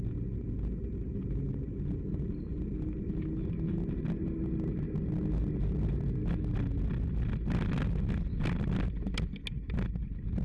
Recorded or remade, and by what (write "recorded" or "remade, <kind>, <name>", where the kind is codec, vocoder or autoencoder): recorded